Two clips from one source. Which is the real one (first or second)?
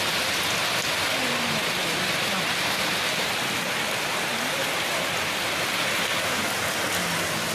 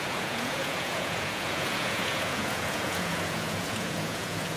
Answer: first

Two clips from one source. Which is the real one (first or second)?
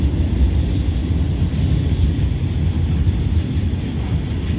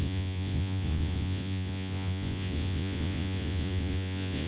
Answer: first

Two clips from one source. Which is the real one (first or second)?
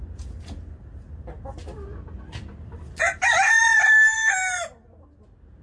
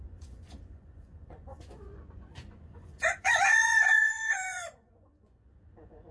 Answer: first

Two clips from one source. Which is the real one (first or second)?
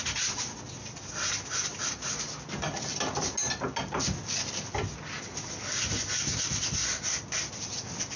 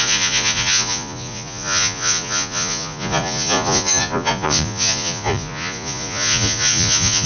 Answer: first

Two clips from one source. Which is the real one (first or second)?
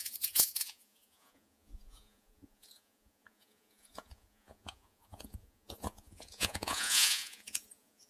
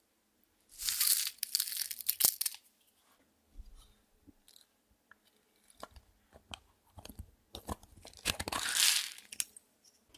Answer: second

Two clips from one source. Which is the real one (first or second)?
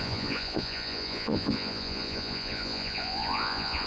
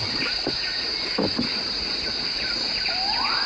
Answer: second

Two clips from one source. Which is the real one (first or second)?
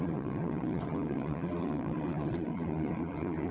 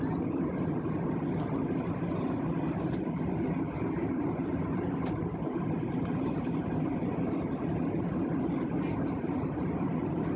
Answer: second